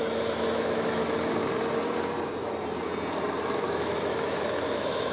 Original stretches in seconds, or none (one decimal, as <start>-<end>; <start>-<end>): 1.4-3.4